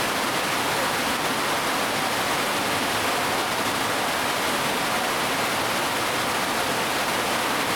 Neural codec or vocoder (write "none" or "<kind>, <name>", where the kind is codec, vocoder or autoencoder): none